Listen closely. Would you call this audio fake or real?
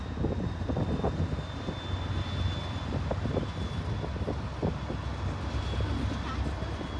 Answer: real